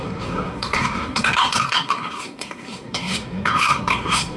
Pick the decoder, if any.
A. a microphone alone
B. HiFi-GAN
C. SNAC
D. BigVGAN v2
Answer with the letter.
C